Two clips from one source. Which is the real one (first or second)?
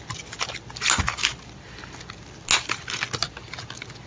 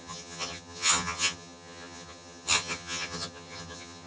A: first